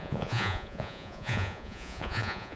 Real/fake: fake